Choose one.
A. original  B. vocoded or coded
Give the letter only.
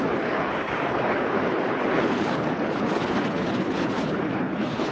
B